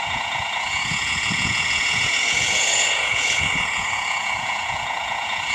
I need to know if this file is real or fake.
fake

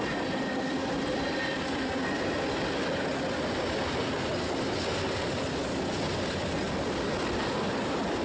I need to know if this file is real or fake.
real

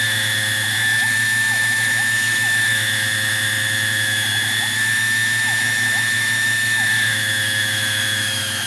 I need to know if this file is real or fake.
fake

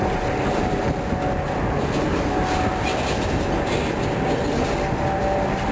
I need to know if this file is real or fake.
real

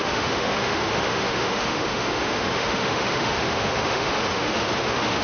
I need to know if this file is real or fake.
fake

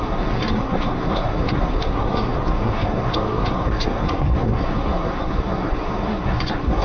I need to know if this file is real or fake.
fake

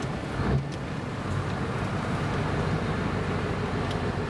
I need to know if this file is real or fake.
real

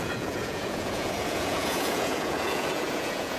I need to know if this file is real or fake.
fake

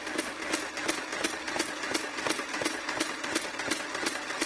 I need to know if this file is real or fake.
real